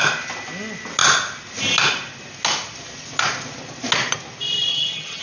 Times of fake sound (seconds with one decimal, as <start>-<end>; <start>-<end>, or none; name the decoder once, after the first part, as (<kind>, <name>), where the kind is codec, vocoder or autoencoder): 4.7-5.2 (vocoder, HiFi-GAN)